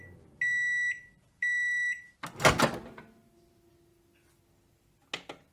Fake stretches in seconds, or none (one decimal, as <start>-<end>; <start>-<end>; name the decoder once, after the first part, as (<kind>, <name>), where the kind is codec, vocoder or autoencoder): none